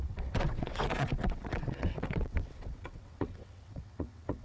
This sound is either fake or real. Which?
fake